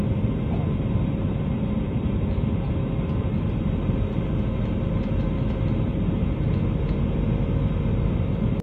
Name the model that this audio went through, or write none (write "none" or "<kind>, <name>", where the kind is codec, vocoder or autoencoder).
none